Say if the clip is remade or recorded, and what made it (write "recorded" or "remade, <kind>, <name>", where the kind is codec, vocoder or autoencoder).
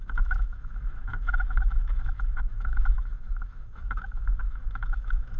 remade, autoencoder, DAC-VAE